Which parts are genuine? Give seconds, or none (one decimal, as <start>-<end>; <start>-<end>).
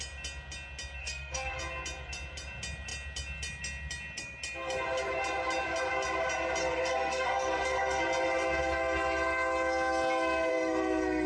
0.0-1.0; 1.6-6.6; 8.0-10.5